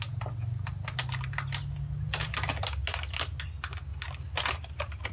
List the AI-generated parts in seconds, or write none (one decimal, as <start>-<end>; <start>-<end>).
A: none